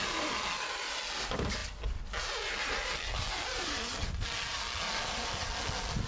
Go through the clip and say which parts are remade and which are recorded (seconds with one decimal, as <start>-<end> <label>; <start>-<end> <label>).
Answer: 0.0-6.1 recorded